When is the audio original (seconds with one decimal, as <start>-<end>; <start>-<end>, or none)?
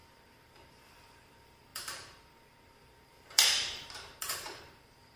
none